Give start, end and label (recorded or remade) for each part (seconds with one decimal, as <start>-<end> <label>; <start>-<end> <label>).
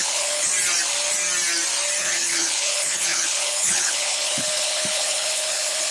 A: 0.0-0.5 remade; 0.5-2.0 recorded; 2.0-5.9 remade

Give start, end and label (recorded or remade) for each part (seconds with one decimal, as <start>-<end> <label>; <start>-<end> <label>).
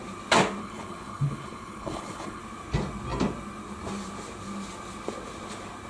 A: 0.0-0.6 recorded; 0.6-2.4 remade; 2.4-5.9 recorded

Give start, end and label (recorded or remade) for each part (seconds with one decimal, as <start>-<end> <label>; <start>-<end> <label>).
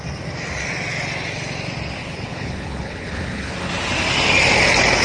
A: 0.0-2.0 recorded; 2.0-3.5 remade; 3.5-5.0 recorded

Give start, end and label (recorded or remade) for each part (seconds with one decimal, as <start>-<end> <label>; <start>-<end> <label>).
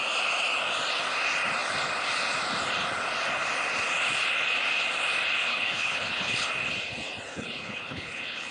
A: 0.0-5.5 recorded; 5.5-6.5 remade; 6.5-7.3 recorded; 7.3-8.5 remade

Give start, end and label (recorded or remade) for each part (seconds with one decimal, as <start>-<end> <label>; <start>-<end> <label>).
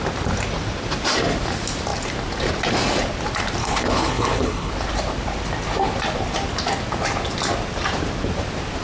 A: 0.0-3.6 recorded; 3.6-4.7 remade; 4.7-8.8 recorded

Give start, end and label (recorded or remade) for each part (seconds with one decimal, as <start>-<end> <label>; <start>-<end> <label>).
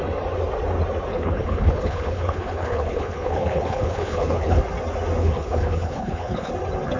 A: 0.0-1.1 recorded; 1.1-4.6 remade; 4.6-5.2 recorded; 5.2-6.5 remade; 6.5-7.0 recorded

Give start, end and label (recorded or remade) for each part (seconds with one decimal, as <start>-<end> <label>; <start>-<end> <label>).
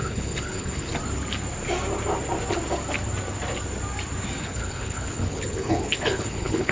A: 0.0-0.9 remade; 0.9-4.4 recorded; 4.4-6.7 remade